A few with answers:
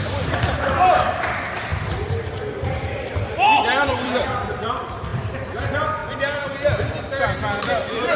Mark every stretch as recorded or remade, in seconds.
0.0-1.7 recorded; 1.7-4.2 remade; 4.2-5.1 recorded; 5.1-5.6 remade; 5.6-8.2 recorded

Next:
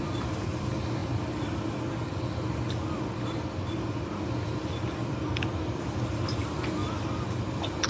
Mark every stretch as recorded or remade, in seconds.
0.0-7.9 recorded

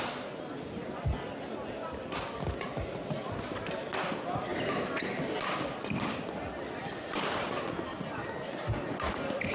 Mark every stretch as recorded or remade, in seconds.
0.0-7.9 recorded; 7.9-9.1 remade; 9.1-9.5 recorded

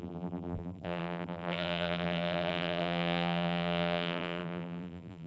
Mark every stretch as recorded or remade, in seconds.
0.0-5.3 remade

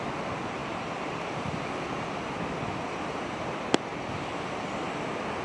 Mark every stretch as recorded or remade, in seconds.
0.0-3.9 remade; 3.9-5.4 recorded

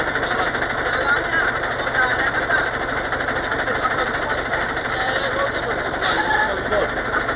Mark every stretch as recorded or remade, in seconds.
0.0-2.1 recorded; 2.1-6.4 remade; 6.4-7.4 recorded